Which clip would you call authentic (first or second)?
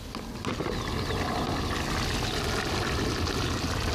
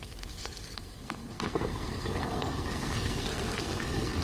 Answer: first